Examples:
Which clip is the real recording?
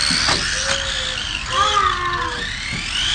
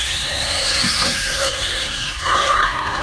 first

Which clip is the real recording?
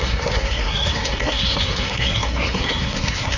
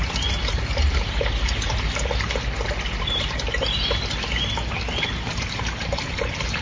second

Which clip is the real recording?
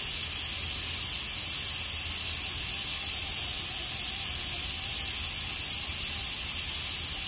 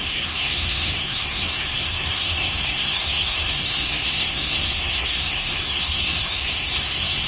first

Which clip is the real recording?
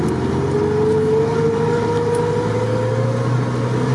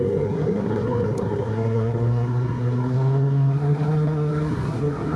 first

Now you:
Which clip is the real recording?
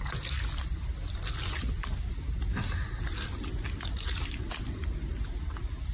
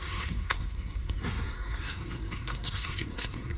first